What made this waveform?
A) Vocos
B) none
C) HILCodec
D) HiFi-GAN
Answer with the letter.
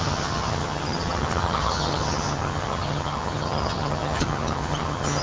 D